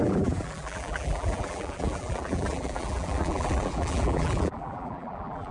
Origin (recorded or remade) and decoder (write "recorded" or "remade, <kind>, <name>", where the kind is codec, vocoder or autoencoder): remade, vocoder, BigVGAN v2